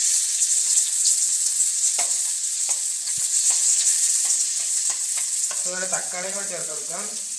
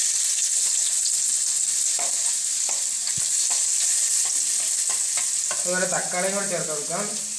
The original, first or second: second